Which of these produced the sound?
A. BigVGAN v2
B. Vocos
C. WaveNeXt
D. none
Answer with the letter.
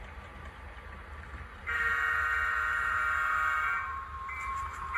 A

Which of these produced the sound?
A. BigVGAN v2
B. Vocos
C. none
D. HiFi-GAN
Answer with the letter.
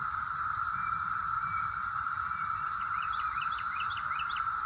C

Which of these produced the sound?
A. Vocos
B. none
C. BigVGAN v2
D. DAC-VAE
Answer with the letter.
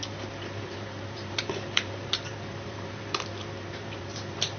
C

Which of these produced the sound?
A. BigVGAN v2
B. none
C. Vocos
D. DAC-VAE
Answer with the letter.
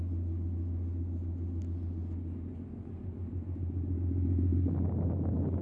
B